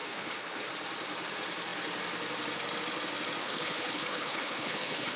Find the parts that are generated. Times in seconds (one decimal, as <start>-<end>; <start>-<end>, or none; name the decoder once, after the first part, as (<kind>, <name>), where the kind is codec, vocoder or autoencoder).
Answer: 0.0-0.7 (codec, HILCodec); 3.4-5.2